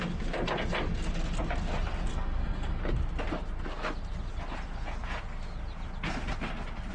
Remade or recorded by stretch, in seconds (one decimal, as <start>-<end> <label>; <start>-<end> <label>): 0.0-2.1 recorded; 2.1-2.8 remade; 2.8-6.9 recorded